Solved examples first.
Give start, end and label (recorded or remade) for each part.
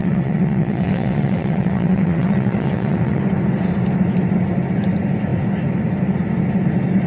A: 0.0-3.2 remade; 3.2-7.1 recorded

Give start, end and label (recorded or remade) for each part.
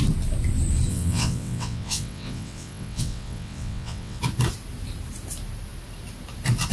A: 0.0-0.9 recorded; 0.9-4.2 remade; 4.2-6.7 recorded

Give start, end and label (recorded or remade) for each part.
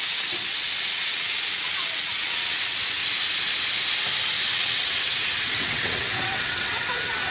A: 0.0-3.0 remade; 3.0-4.5 recorded; 4.5-7.3 remade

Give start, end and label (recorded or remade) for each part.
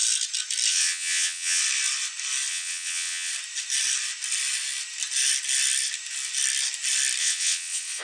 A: 0.0-0.7 recorded; 0.7-1.6 remade; 1.6-2.5 recorded; 2.5-3.3 remade; 3.3-7.2 recorded; 7.2-8.0 remade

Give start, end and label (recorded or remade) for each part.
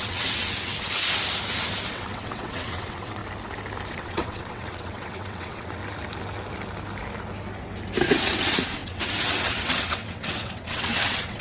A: 0.0-1.0 remade; 1.0-1.9 recorded; 1.9-3.2 remade; 3.2-3.9 recorded; 3.9-5.8 remade; 5.8-8.1 recorded; 8.1-11.4 remade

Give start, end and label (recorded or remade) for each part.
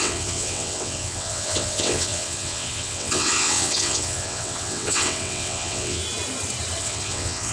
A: 0.0-6.0 remade; 6.0-6.8 recorded; 6.8-7.5 remade